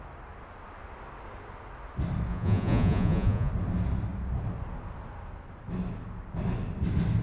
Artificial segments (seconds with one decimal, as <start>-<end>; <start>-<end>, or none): 2.3-3.5